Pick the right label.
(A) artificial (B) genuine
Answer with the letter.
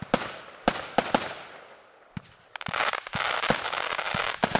B